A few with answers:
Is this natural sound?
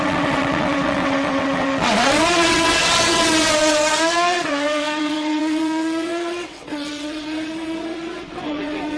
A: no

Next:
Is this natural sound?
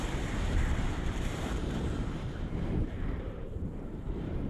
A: no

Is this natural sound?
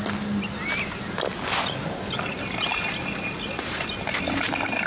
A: yes